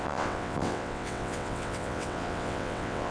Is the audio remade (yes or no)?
yes